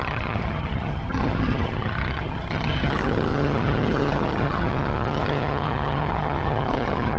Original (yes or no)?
no